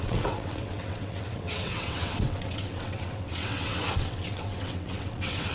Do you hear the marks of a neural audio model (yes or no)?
yes